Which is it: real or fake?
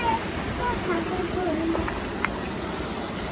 fake